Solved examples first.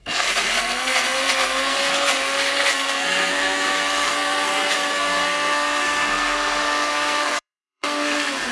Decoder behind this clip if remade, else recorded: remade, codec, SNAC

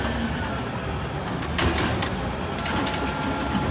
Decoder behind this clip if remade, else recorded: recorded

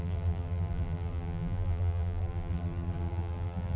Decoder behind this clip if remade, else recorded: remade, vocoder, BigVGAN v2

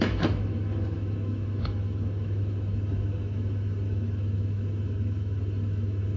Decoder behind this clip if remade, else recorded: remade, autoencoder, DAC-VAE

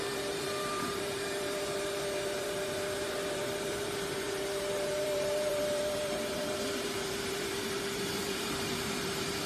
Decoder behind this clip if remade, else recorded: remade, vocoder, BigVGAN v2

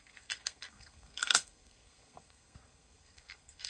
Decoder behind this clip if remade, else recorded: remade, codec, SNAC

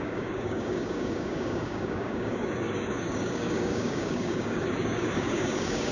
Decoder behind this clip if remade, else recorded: remade, codec, DAC